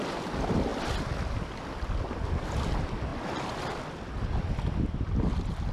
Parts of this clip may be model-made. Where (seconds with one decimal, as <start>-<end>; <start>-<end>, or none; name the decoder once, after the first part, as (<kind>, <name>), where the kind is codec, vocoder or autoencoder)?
none